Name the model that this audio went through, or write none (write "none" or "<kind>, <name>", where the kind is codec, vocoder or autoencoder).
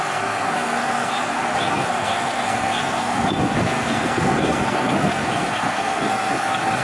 codec, SNAC